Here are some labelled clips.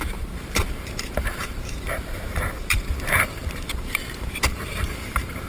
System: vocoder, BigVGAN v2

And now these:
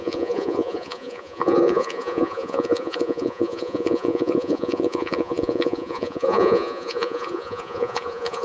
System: vocoder, Vocos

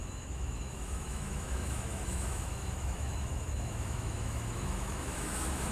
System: autoencoder, DAC-VAE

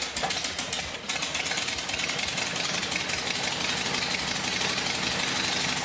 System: none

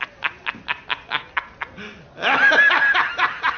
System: none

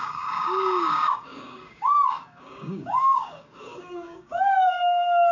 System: codec, DAC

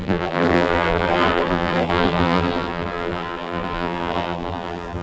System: vocoder, BigVGAN v2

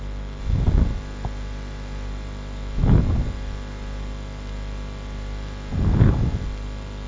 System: none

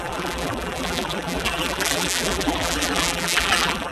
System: vocoder, BigVGAN v2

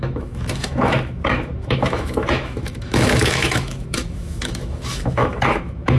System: autoencoder, DAC-VAE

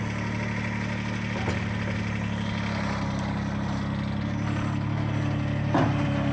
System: none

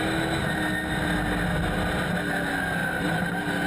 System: none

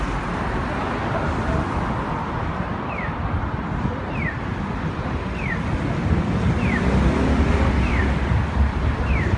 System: none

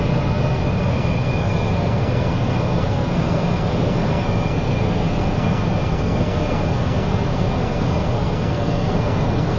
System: codec, SNAC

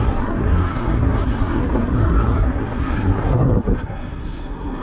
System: codec, SNAC